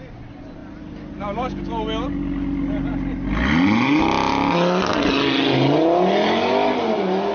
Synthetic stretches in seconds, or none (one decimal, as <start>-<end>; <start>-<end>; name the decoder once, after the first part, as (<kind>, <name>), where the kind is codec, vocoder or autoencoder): none